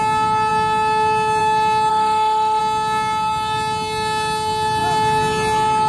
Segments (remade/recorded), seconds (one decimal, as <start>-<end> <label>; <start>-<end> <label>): 0.0-1.9 recorded; 1.9-2.6 remade; 2.6-5.9 recorded